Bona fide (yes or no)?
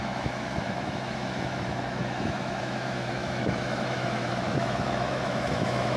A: no